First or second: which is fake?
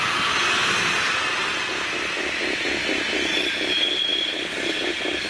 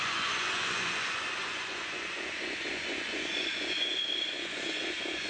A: second